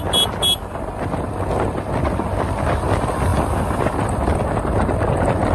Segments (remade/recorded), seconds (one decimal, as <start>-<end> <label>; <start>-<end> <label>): 0.0-5.5 recorded